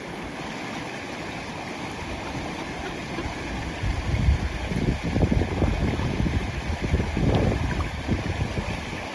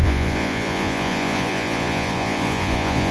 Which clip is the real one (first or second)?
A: first